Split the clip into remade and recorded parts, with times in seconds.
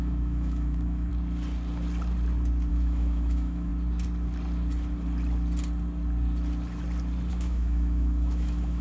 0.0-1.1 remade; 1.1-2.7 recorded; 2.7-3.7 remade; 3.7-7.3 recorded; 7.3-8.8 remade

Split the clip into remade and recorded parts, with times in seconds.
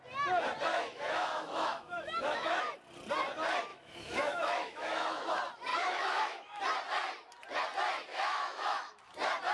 0.0-0.7 recorded; 0.7-2.6 remade; 2.6-3.7 recorded; 3.7-5.3 remade; 5.3-5.7 recorded; 5.7-6.6 remade; 6.6-8.1 recorded; 8.1-9.0 remade; 9.0-9.5 recorded